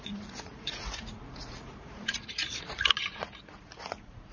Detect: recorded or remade remade